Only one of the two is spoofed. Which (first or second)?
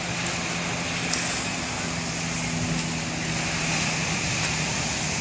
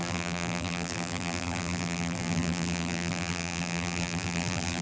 second